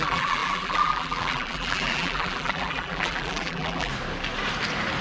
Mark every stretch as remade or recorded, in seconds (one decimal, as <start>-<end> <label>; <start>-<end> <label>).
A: 0.0-3.9 remade; 3.9-5.0 recorded